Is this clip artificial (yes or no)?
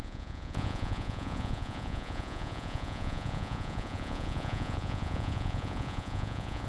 yes